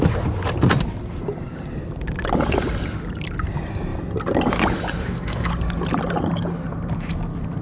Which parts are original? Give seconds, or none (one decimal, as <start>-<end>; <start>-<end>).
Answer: 0.0-5.0; 5.5-7.6